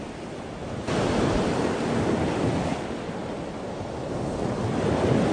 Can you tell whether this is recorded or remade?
recorded